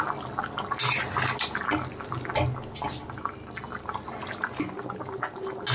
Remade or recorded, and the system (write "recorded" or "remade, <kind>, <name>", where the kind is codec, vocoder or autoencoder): recorded